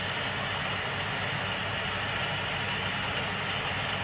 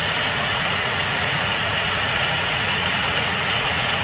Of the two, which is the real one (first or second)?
first